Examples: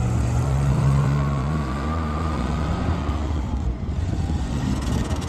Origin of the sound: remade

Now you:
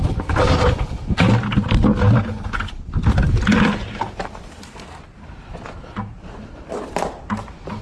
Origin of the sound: recorded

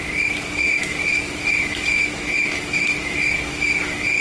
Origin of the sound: remade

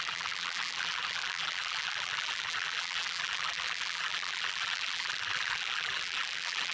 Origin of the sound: remade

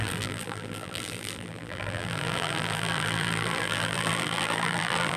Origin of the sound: remade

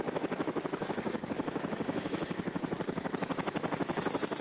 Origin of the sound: remade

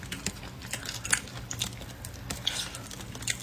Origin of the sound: recorded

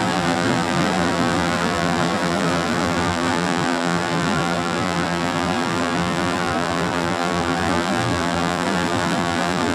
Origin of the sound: remade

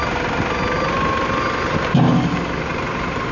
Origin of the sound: recorded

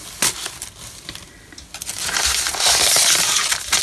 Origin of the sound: recorded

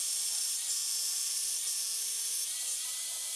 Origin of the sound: remade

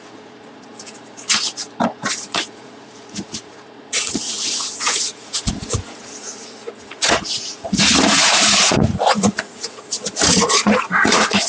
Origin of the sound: remade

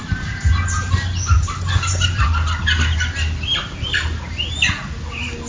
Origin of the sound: recorded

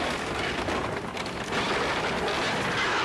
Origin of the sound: recorded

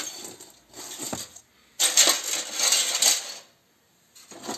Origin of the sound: recorded